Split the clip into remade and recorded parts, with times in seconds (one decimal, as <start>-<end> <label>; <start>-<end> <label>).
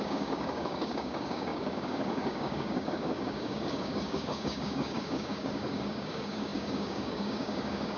0.0-8.0 remade